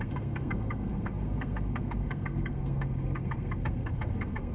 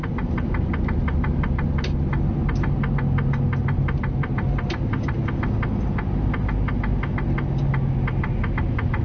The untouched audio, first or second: second